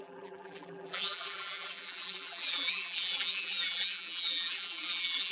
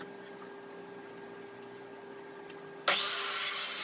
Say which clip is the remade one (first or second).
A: first